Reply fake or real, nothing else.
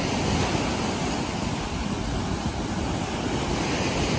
real